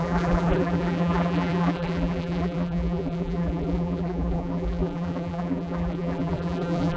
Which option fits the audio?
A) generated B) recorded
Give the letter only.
A